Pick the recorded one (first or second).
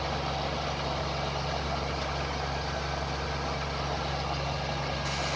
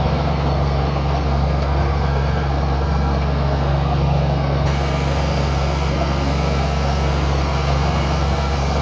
first